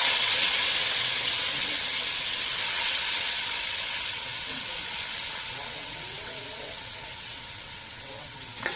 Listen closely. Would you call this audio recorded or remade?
remade